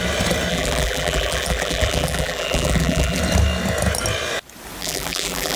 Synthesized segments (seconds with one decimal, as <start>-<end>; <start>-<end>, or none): 0.5-3.2; 4.8-5.6